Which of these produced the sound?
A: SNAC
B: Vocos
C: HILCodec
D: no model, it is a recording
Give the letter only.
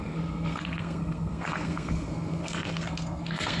A